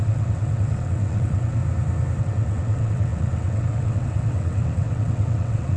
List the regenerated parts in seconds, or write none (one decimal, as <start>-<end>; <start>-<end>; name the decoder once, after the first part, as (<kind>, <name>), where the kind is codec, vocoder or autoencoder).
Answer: 0.0-1.6 (vocoder, WaveNeXt); 2.2-5.8